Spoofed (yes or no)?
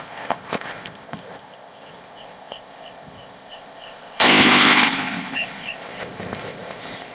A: yes